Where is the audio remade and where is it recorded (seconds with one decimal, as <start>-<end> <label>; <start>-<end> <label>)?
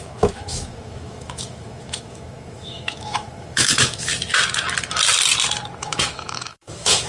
0.0-4.1 remade; 4.1-5.8 recorded; 5.8-7.1 remade